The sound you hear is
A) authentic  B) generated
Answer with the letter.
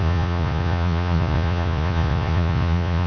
B